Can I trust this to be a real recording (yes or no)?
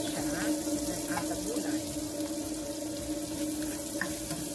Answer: yes